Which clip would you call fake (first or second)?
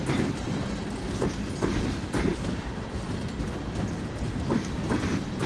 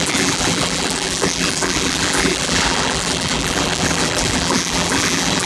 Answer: second